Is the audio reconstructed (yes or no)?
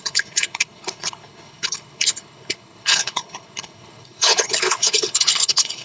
yes